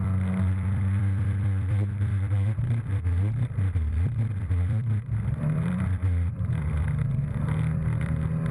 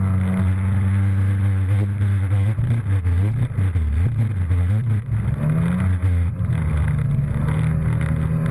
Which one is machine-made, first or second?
first